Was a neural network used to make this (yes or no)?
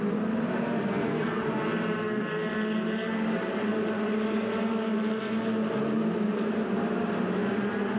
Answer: no